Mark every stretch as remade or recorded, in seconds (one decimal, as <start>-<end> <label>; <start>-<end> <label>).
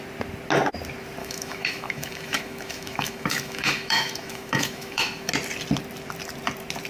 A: 0.0-1.2 recorded; 1.2-5.3 remade; 5.3-6.9 recorded